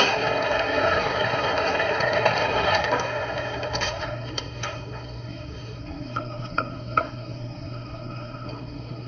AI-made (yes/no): yes